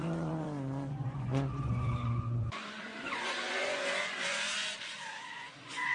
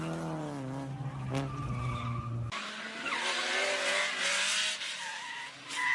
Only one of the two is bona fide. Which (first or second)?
second